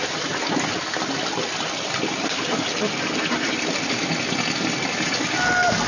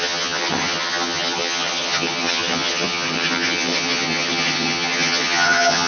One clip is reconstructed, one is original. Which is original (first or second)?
first